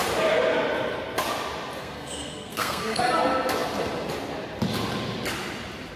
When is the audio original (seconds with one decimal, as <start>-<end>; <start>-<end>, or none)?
0.0-1.8; 3.0-6.0